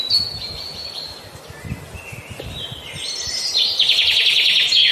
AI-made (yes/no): no